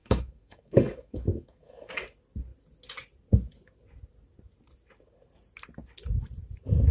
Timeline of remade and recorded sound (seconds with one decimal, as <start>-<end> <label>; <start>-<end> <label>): 0.0-1.9 remade; 1.9-6.9 recorded